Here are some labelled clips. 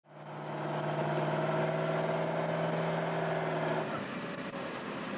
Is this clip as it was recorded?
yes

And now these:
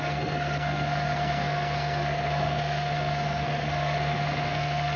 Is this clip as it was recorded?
no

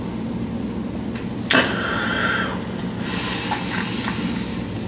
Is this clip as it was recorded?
yes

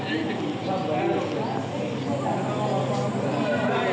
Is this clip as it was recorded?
yes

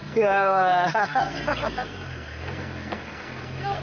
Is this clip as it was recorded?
no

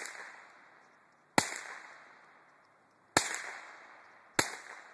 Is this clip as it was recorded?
yes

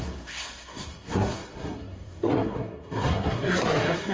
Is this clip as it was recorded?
no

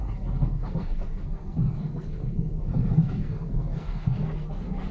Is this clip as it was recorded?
no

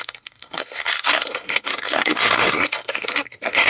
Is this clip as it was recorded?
no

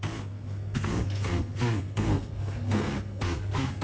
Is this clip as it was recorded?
no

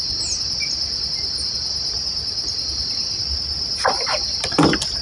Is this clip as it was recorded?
yes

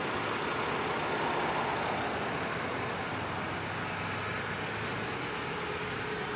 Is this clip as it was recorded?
yes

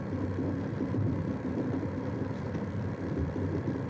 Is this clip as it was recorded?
yes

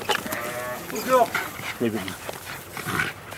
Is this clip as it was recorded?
yes